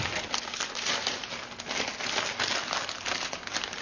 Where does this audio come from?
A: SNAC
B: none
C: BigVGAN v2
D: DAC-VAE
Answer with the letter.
B